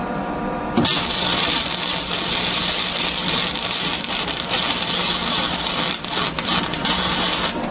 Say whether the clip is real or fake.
real